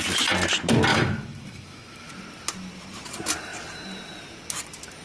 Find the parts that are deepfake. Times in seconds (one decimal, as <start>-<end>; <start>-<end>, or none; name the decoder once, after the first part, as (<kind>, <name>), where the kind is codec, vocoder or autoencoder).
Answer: 0.9-2.1 (autoencoder, DAC-VAE)